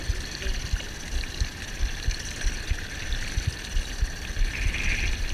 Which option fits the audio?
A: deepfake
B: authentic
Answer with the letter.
B